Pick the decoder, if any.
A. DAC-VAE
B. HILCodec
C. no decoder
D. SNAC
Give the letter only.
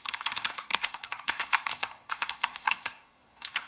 D